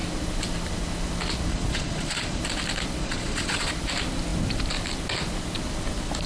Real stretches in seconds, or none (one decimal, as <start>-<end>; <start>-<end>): 0.0-1.5; 2.4-3.0; 3.7-6.3